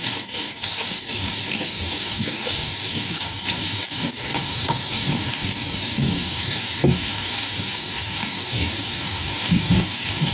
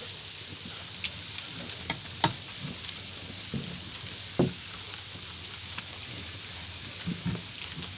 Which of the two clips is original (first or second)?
second